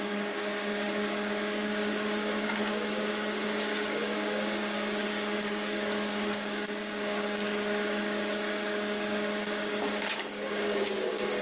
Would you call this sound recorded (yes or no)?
no